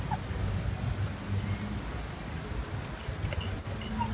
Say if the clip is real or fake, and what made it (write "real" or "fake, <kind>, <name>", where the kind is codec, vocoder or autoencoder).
real